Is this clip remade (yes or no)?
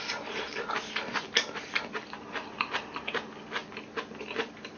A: no